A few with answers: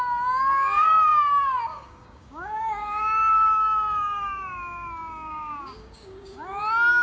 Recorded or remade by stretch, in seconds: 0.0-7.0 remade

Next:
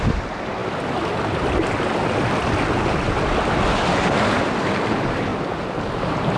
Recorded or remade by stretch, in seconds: 0.0-6.4 recorded

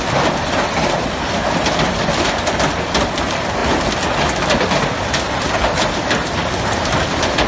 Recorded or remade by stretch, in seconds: 0.0-7.5 recorded

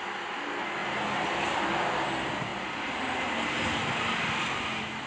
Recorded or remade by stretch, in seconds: 0.0-5.1 recorded

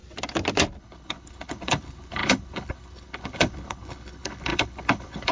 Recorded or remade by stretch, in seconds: 0.0-0.8 recorded; 0.8-5.3 remade